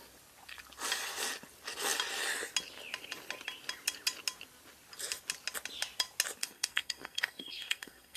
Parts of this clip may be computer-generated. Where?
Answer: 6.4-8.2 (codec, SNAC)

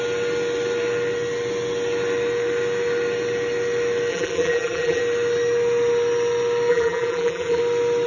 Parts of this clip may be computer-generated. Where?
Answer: 4.1-5.0 (vocoder, BigVGAN v2); 6.7-7.6

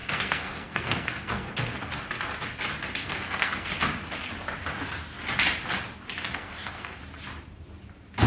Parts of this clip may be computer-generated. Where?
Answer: 0.0-2.0 (codec, SNAC); 3.0-3.7; 6.2-7.0

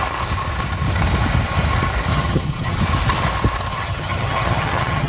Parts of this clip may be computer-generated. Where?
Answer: 2.1-2.8 (vocoder, HiFi-GAN); 3.7-5.1

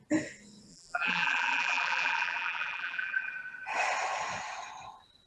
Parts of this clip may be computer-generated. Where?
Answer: 0.7-3.3 (vocoder, BigVGAN v2)

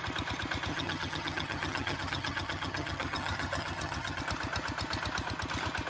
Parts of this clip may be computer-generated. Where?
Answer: 0.7-4.2 (vocoder, HiFi-GAN)

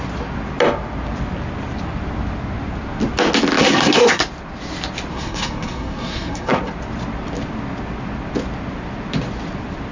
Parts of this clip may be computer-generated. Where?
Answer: 3.6-4.2 (codec, SNAC); 5.1-6.6

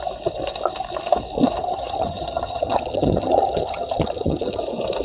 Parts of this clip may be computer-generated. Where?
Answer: 1.6-4.6 (vocoder, HiFi-GAN)